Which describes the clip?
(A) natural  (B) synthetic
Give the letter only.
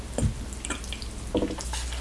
A